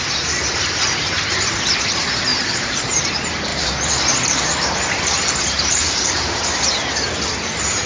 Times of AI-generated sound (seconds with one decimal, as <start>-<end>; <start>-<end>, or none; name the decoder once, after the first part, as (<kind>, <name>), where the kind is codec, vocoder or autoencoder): 2.3-3.0 (vocoder, BigVGAN v2); 3.5-6.4